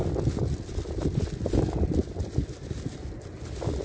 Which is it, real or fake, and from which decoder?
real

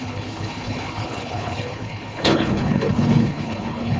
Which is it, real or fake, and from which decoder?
fake, codec, HILCodec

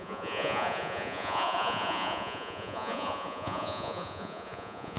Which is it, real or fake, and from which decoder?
fake, vocoder, Vocos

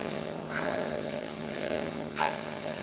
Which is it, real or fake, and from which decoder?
fake, vocoder, HiFi-GAN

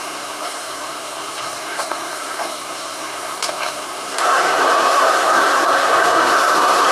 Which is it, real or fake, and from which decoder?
fake, codec, SNAC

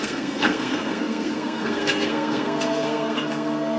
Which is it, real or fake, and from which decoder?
fake, codec, SNAC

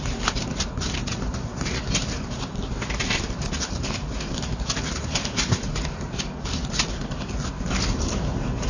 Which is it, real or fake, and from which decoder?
fake, vocoder, BigVGAN v2